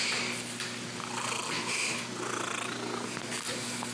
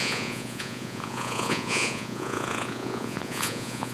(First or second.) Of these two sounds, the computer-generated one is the second